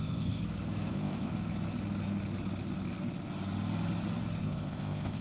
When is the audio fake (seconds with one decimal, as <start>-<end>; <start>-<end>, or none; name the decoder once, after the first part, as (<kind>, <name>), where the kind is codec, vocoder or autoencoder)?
0.0-0.4 (codec, ZipCodec); 0.9-1.3; 4.4-5.2